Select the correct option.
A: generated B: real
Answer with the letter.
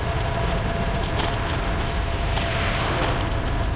B